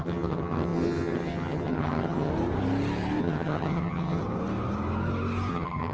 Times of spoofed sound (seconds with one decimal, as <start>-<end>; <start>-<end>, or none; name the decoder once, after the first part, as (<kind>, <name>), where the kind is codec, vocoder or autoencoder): 0.0-2.3 (vocoder, HiFi-GAN); 3.2-4.2; 5.5-5.9